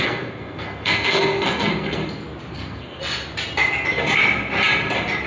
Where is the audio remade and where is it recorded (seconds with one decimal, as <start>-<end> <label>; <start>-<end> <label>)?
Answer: 0.0-2.0 remade; 2.0-2.5 recorded; 2.5-3.0 remade; 3.0-5.3 recorded